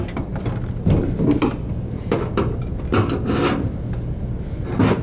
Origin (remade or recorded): remade